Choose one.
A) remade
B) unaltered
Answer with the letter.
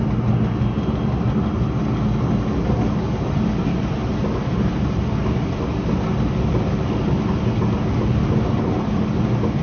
B